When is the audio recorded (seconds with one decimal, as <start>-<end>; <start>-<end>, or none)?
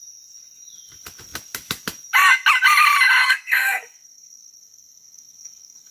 0.0-3.2